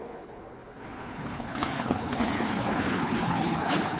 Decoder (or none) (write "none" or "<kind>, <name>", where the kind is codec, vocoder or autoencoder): codec, HILCodec